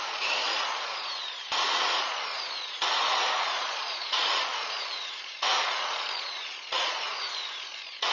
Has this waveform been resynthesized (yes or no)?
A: yes